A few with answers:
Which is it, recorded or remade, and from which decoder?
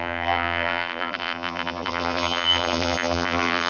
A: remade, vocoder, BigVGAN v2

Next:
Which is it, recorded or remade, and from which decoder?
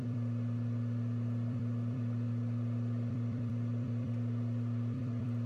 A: remade, vocoder, BigVGAN v2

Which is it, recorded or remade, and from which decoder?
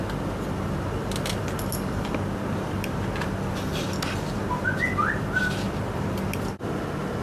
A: recorded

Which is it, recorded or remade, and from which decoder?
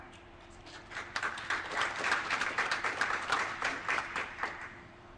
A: remade, vocoder, BigVGAN v2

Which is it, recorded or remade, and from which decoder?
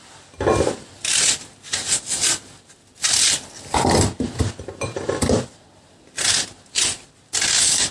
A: recorded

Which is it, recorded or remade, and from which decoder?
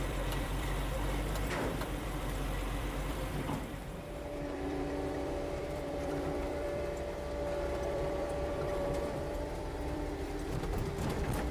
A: remade, vocoder, BigVGAN v2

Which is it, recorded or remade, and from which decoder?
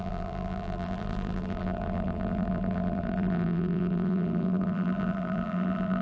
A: remade, vocoder, BigVGAN v2